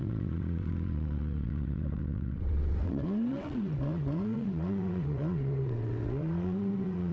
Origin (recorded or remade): remade